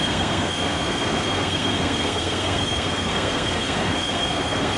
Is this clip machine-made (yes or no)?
yes